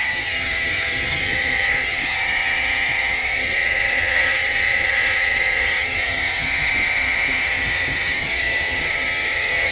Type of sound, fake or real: fake